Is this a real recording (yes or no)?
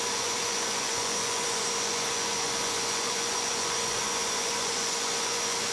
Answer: no